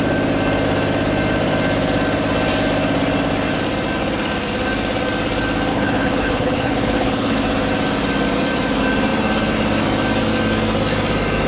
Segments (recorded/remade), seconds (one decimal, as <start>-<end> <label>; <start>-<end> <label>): 0.0-5.7 recorded; 5.7-7.4 remade; 7.4-11.5 recorded